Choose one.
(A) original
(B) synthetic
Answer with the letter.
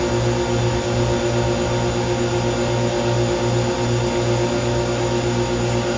A